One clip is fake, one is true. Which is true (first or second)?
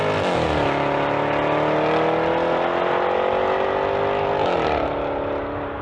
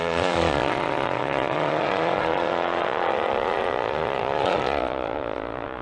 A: first